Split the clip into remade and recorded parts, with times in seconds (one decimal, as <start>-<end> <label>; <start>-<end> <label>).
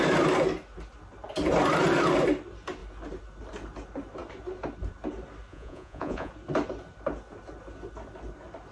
0.0-5.5 recorded; 5.5-6.3 remade; 6.3-8.7 recorded